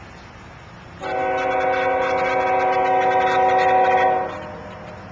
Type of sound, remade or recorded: recorded